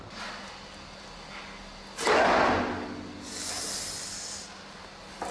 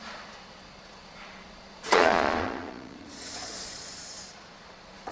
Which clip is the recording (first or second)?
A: first